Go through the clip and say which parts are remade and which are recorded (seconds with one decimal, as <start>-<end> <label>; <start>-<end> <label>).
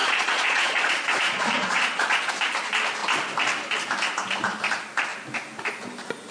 0.0-2.3 remade; 2.3-6.3 recorded